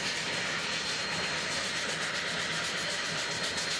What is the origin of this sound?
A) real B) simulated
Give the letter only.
A